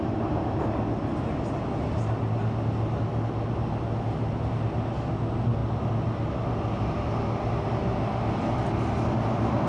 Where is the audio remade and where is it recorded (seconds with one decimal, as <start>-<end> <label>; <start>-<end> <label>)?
0.0-9.7 recorded